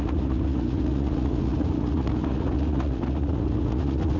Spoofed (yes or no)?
yes